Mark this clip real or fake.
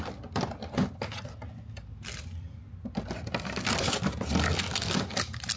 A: real